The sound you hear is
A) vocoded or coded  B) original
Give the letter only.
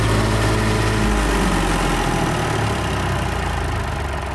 B